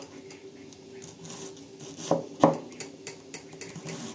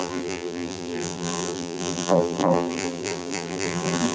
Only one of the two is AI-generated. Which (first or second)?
second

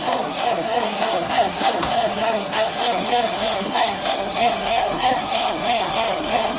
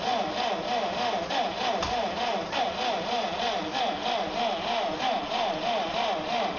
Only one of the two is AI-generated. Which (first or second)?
first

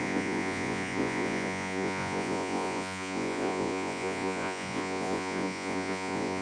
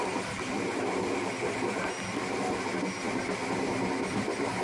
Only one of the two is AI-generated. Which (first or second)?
first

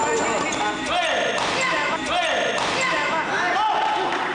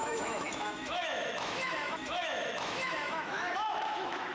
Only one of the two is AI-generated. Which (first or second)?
second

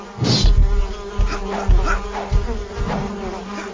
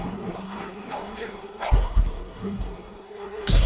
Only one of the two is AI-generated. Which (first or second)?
second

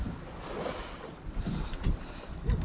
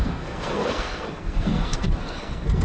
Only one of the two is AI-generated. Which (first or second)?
second